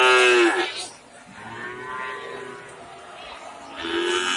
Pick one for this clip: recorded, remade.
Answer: recorded